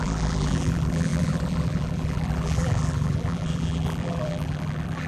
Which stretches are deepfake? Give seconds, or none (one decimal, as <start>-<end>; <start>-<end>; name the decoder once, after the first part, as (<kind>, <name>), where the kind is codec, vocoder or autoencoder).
0.0-5.1 (vocoder, BigVGAN v2)